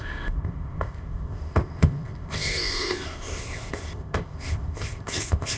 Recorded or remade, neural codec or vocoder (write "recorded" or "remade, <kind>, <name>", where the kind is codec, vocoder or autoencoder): remade, codec, ZipCodec